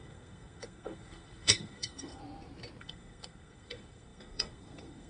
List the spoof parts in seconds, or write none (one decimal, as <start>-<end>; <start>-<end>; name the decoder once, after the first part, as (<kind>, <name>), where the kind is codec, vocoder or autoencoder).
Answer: 0.0-2.2 (codec, SNAC); 2.8-5.1